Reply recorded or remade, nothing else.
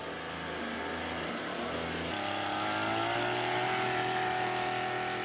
recorded